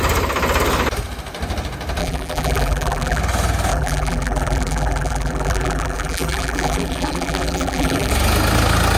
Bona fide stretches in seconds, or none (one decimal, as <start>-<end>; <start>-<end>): 0.0-2.0; 3.2-3.7; 8.1-9.0